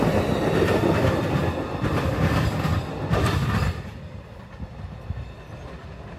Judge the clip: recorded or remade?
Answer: recorded